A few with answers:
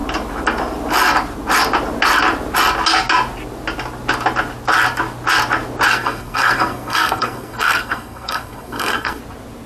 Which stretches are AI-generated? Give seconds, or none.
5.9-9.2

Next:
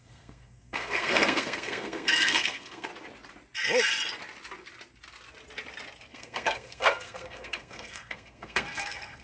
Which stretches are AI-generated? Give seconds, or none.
0.0-2.9; 6.1-9.2

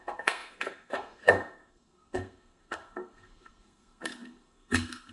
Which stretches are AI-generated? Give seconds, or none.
0.0-5.1

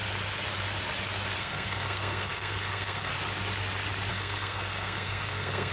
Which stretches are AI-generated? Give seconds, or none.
1.4-3.1; 4.1-5.7